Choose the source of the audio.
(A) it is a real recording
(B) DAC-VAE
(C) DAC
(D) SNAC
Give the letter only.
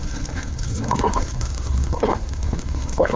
D